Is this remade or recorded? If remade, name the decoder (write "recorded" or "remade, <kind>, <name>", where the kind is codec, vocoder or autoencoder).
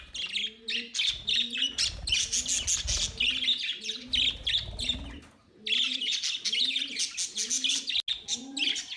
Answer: recorded